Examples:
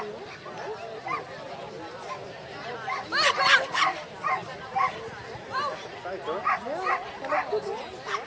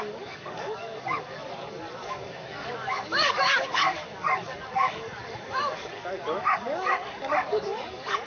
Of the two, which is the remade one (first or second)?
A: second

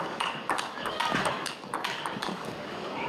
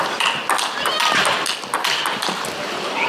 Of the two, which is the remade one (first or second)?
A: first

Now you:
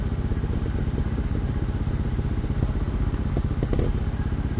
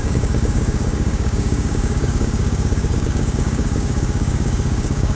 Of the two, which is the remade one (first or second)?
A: second